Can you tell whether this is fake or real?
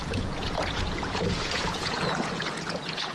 fake